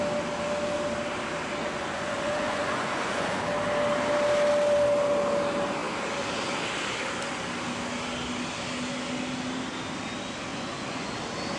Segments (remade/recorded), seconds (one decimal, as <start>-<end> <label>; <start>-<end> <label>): 0.0-1.6 recorded; 1.6-3.4 remade; 3.4-10.5 recorded; 10.5-11.1 remade; 11.1-11.6 recorded